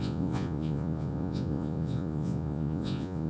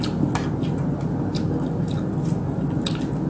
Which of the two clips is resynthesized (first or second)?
first